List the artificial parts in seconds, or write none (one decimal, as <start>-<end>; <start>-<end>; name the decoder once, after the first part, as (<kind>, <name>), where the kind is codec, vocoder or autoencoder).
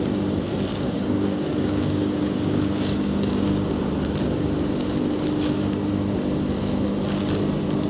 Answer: 0.7-3.8 (codec, DAC)